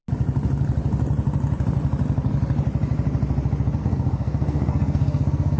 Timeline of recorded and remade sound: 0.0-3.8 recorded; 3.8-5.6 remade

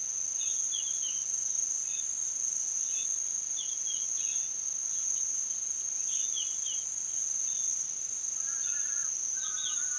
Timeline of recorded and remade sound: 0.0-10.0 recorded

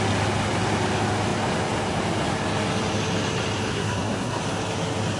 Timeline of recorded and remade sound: 0.0-3.7 recorded; 3.7-4.4 remade; 4.4-5.2 recorded

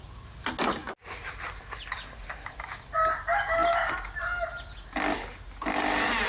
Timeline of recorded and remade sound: 0.0-6.3 recorded